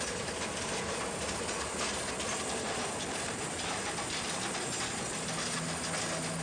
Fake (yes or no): no